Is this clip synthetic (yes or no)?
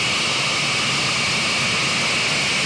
no